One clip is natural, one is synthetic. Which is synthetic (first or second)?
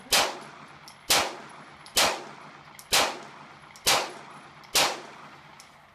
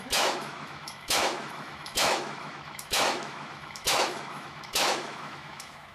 second